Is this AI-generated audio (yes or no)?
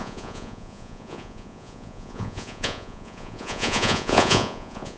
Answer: yes